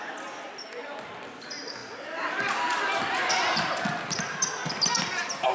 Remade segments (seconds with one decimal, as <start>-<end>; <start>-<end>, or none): none